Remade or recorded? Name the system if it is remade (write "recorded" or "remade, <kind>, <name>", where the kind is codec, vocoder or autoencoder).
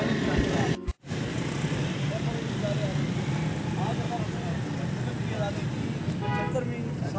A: recorded